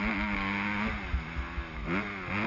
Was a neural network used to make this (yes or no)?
no